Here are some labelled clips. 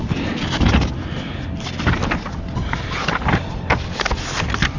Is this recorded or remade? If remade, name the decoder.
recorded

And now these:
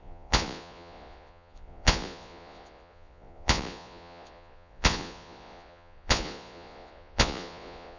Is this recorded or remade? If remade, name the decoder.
remade, vocoder, Vocos